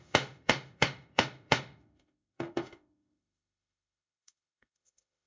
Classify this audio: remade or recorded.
remade